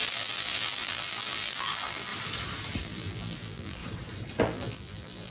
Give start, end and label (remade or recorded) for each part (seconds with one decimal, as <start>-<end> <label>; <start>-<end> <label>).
0.0-2.1 remade; 2.1-2.8 recorded; 2.8-3.8 remade; 3.8-4.4 recorded; 4.4-5.3 remade